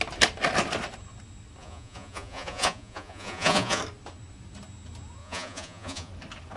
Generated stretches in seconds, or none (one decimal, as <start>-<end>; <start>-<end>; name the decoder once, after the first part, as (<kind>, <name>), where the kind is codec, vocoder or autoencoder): 1.6-3.8 (vocoder, Vocos); 5.2-6.1